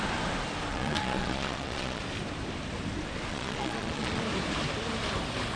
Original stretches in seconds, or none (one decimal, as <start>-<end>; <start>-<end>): 0.0-0.7; 2.0-3.3; 4.2-5.6